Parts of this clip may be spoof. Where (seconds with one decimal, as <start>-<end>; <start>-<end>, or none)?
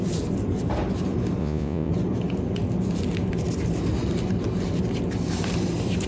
1.4-1.9